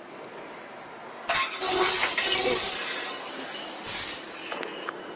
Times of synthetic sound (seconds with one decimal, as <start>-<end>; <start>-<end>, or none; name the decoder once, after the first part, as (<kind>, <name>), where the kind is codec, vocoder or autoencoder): none